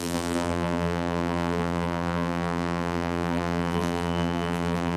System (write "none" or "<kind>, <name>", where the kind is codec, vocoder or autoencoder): vocoder, BigVGAN v2